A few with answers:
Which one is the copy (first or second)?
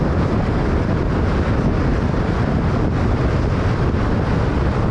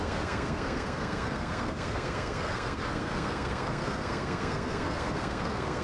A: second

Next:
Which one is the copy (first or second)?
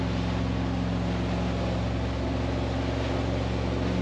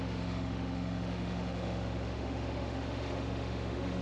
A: second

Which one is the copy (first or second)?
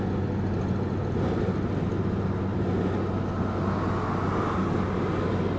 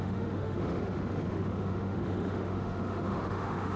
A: second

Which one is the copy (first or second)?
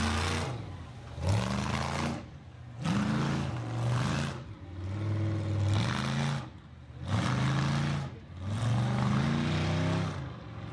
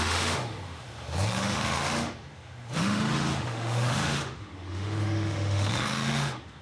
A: second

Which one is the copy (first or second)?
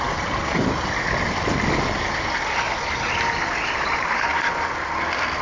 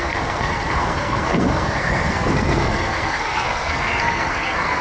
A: second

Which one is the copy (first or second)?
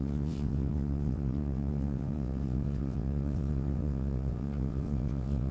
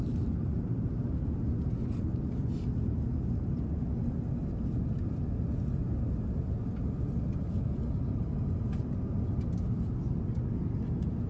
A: first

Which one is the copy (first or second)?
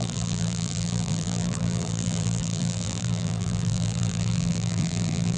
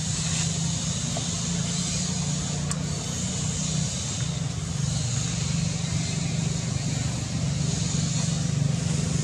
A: first